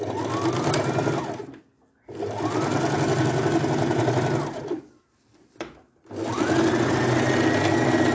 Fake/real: real